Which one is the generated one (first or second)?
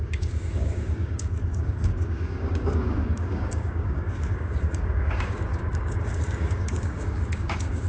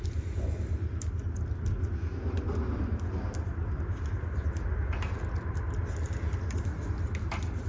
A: first